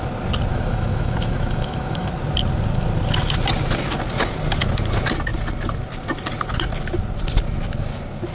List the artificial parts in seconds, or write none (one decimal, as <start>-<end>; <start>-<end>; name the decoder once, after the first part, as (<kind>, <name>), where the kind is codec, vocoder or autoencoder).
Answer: 0.5-2.1 (autoencoder, DAC-VAE)